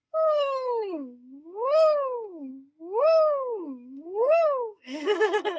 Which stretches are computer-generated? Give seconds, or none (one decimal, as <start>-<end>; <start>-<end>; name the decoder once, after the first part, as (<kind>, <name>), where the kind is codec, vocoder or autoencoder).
0.0-2.5 (codec, SNAC); 3.0-5.6